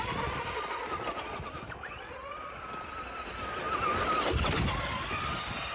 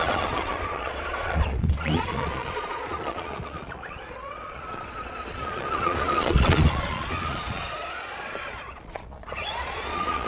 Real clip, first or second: first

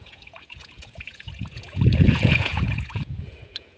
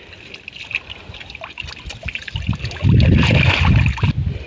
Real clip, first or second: second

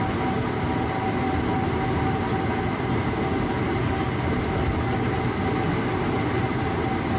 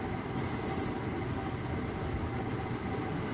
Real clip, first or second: first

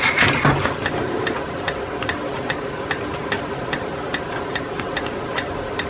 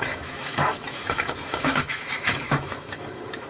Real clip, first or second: first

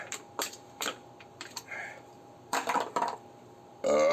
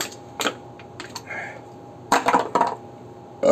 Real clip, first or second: second